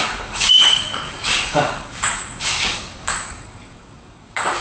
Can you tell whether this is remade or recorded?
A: remade